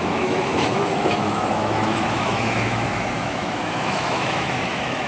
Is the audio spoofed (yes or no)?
yes